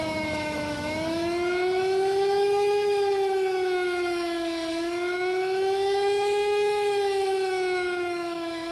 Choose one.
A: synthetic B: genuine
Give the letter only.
A